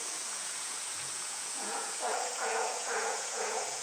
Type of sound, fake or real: fake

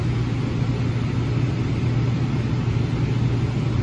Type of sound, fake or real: real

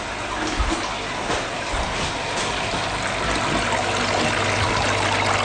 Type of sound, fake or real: real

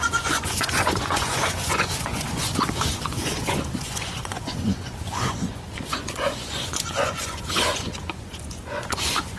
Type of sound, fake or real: fake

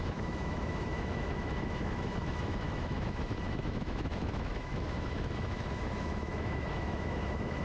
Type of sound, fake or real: fake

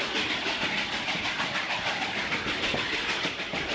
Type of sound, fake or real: real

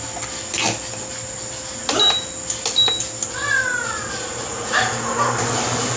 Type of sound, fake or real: real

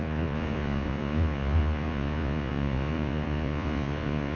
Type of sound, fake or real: fake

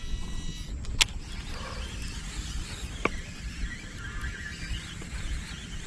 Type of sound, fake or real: real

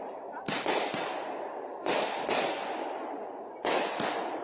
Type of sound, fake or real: real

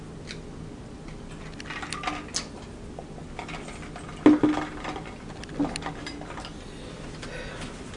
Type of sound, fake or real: real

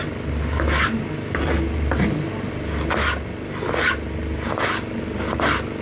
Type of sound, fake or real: real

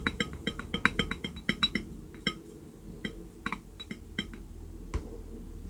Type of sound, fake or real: real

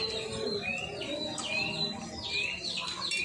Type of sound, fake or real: real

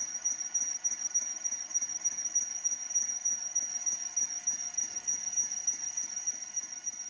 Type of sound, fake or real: real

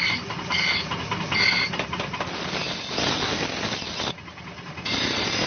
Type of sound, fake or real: real